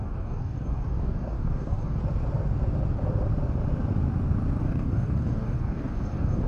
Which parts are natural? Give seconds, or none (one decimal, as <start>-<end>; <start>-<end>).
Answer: 2.0-4.6